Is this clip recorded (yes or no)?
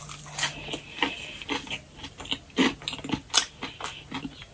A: yes